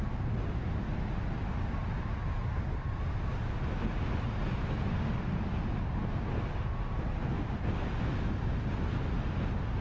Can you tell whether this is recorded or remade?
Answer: recorded